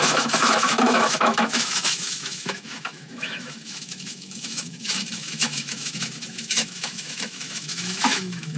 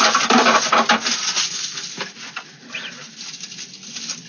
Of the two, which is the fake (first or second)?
first